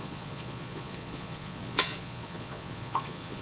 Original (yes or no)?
no